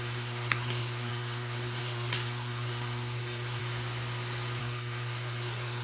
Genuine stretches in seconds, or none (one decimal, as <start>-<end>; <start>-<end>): 3.6-4.6